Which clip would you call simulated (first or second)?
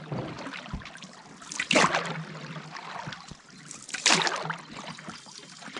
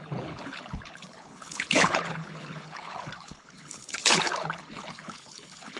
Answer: second